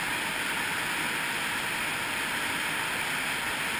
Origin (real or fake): real